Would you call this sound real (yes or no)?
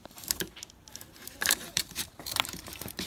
no